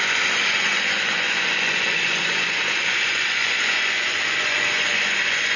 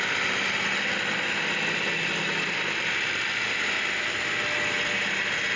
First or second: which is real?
second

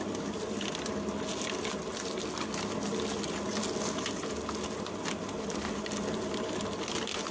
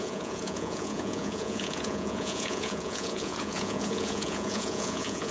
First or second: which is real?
first